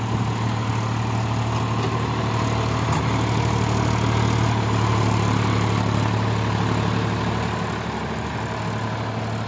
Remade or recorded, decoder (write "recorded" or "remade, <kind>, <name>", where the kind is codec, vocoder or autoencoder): recorded